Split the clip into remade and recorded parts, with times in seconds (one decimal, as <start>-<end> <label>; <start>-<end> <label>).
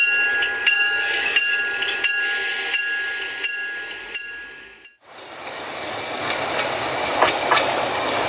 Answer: 0.0-0.6 recorded; 0.6-1.5 remade; 1.5-8.3 recorded